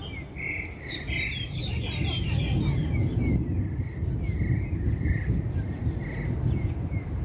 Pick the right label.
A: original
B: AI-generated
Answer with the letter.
A